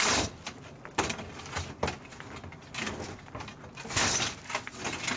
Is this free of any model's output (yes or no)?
yes